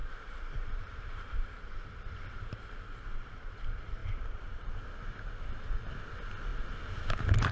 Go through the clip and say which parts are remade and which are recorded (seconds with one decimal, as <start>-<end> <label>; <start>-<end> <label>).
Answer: 0.0-1.8 remade; 1.8-4.0 recorded; 4.0-4.9 remade; 4.9-7.5 recorded